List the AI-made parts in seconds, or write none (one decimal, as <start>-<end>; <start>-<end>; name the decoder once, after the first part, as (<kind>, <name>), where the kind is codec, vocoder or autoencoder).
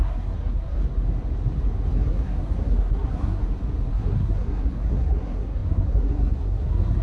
0.0-0.8 (codec, SNAC); 1.9-3.4; 3.9-7.0